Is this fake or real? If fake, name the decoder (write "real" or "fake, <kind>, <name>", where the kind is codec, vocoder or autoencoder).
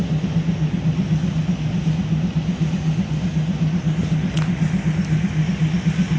real